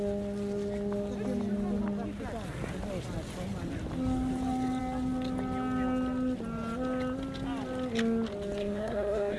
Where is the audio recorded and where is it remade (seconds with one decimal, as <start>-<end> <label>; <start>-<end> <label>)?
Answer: 0.0-8.6 recorded; 8.6-9.4 remade